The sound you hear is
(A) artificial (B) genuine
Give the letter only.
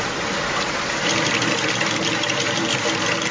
B